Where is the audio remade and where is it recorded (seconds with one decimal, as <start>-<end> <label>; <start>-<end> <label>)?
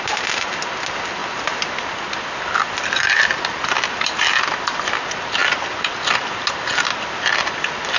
0.0-8.0 recorded